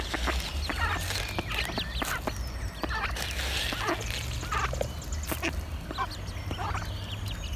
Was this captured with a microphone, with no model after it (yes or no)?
yes